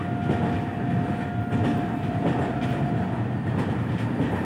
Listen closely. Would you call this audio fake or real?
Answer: real